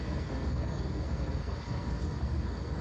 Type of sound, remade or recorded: remade